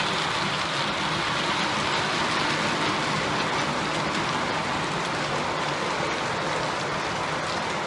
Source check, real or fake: real